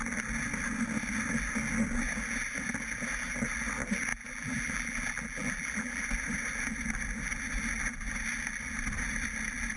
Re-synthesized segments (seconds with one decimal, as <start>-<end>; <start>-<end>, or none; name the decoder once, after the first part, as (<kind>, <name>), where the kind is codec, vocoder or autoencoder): 4.1-6.0 (vocoder, BigVGAN v2)